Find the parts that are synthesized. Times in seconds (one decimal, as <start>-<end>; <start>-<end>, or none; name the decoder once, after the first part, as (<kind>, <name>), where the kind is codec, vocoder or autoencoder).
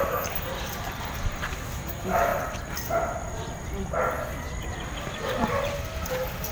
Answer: 2.3-3.3 (vocoder, BigVGAN v2); 4.7-6.5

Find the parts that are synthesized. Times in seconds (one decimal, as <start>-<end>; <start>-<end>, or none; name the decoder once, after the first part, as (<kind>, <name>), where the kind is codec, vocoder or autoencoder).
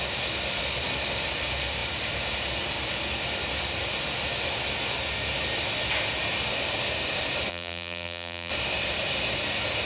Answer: 7.5-8.5 (vocoder, BigVGAN v2)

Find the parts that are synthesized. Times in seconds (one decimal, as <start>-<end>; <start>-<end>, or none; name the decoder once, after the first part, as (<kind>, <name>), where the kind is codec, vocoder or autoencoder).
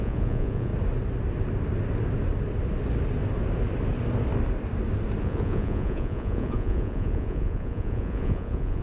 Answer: 0.0-0.7 (vocoder, Vocos); 5.2-8.8